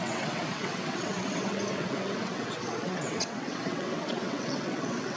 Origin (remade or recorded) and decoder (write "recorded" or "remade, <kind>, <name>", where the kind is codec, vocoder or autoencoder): remade, vocoder, WaveNeXt